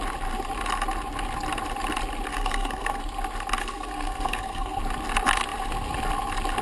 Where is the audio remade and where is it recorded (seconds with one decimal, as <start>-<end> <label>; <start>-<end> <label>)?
0.0-2.3 recorded; 2.3-3.0 remade; 3.0-3.6 recorded; 3.6-4.8 remade; 4.8-6.6 recorded